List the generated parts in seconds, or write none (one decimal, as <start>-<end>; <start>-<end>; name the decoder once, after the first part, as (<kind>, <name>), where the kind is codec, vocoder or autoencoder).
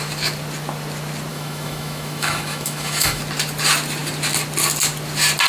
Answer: 1.3-3.2 (autoencoder, DAC-VAE)